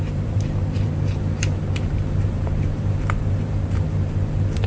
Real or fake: fake